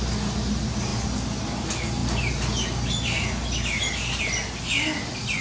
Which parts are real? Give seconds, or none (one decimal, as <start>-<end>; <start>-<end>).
0.0-5.4